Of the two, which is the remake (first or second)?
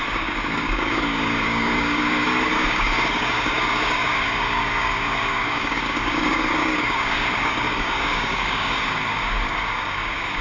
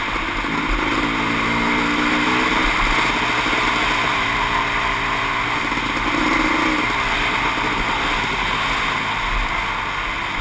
first